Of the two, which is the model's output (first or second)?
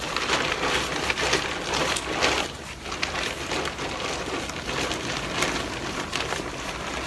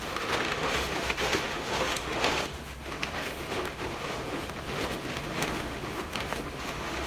second